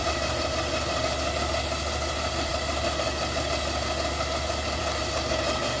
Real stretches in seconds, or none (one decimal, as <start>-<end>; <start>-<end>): 0.0-5.8